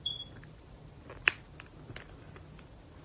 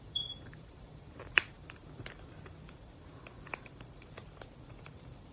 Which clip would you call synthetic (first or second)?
second